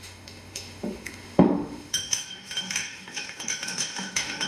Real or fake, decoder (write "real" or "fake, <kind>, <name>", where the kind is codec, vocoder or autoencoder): fake, autoencoder, DAC-VAE